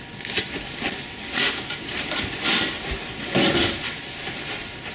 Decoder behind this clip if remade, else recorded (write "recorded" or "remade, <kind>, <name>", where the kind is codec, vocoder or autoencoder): recorded